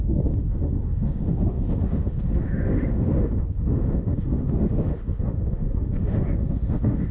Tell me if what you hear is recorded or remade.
remade